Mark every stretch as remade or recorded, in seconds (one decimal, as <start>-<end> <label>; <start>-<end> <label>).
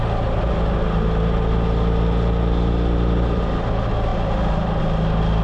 0.0-5.4 recorded